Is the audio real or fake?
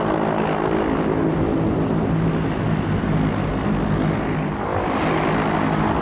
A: real